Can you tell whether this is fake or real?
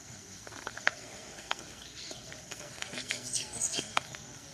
fake